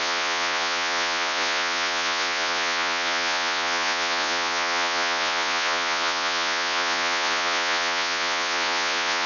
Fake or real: fake